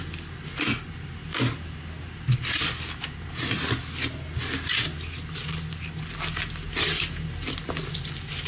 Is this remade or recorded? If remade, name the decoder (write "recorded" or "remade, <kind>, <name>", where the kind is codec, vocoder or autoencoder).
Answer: recorded